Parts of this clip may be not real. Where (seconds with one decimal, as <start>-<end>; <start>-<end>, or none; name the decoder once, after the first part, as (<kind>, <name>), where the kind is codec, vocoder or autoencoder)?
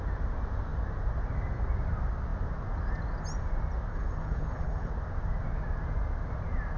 3.9-4.9 (codec, HILCodec)